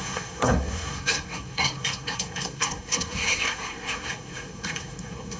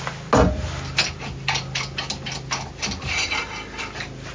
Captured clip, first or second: second